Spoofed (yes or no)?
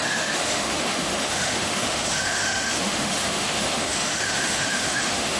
yes